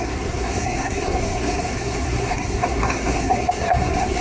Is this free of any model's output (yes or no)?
no